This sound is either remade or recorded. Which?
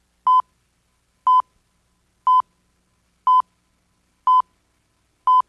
recorded